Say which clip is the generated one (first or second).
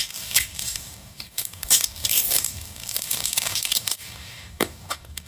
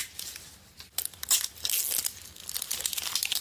first